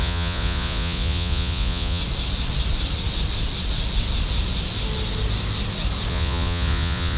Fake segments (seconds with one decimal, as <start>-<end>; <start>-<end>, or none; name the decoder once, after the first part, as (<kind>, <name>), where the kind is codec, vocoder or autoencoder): 0.0-2.0 (vocoder, Vocos); 6.1-7.2